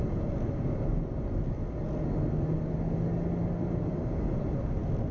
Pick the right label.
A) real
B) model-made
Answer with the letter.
A